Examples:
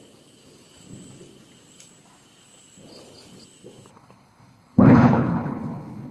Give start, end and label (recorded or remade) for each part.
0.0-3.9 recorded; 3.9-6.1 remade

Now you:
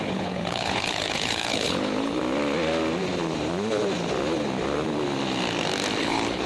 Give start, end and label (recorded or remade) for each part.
0.0-2.2 remade; 2.2-6.0 recorded; 6.0-6.5 remade

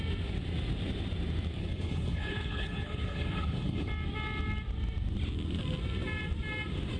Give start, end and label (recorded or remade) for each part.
0.0-1.6 recorded; 1.6-3.9 remade; 3.9-7.0 recorded

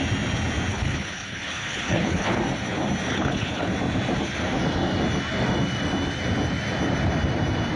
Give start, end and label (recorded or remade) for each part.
0.0-0.7 recorded; 0.7-2.4 remade; 2.4-3.1 recorded; 3.1-3.7 remade; 3.7-7.8 recorded